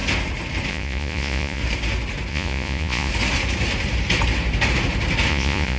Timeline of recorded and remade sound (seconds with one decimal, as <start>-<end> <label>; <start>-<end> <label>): 0.0-0.7 recorded; 0.7-1.6 remade; 1.6-2.3 recorded; 2.3-3.1 remade; 3.1-5.3 recorded; 5.3-5.8 remade